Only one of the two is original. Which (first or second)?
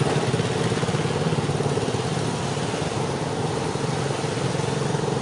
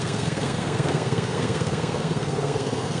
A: first